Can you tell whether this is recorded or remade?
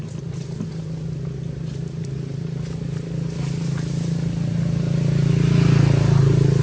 recorded